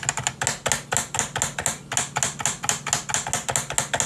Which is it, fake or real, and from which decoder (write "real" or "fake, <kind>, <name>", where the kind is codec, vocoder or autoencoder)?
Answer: real